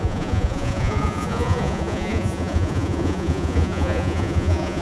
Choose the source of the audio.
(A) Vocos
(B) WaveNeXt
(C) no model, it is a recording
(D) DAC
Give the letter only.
A